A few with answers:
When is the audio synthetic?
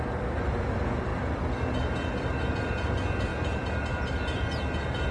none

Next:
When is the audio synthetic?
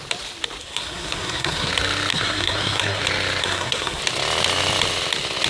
0.6-1.7 (codec, SNAC); 2.1-3.0; 3.4-4.0